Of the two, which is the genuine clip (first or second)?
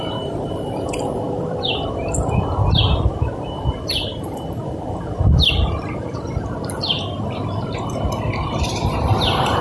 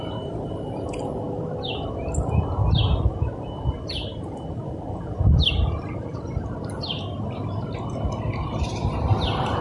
second